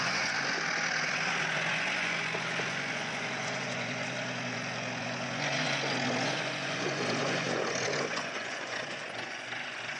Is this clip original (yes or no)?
no